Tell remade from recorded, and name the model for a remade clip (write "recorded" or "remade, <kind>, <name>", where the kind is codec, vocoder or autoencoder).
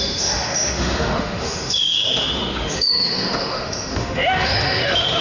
remade, autoencoder, DAC-VAE